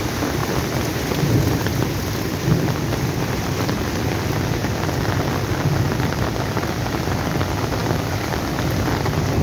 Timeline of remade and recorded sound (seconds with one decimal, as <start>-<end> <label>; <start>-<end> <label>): 0.0-9.4 recorded